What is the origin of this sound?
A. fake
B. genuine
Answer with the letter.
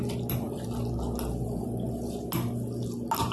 B